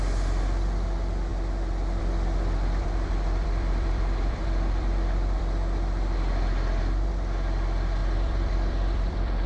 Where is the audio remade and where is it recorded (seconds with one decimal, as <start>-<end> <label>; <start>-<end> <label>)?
0.0-2.8 recorded; 2.8-5.4 remade; 5.4-8.0 recorded; 8.0-9.5 remade